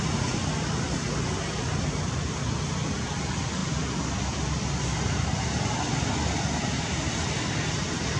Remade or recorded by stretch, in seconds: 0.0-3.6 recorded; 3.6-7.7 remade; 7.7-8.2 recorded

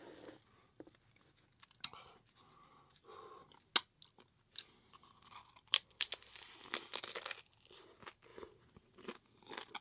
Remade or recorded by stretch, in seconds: 0.0-8.3 recorded; 8.3-9.1 remade; 9.1-9.8 recorded